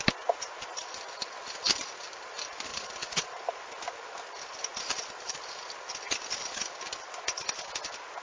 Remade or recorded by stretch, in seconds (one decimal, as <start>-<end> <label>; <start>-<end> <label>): 0.0-2.7 recorded; 2.7-3.4 remade; 3.4-8.2 recorded